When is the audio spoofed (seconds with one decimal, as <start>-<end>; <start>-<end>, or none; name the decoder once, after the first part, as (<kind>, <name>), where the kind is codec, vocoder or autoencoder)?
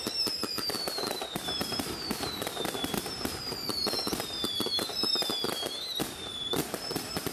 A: 1.6-5.7 (vocoder, BigVGAN v2)